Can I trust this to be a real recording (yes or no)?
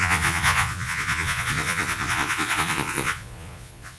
no